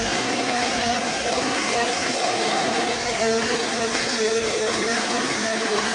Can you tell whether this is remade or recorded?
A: remade